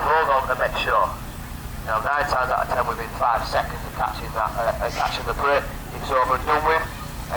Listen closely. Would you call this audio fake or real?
real